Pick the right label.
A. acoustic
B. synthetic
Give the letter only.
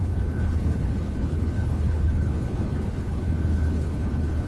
B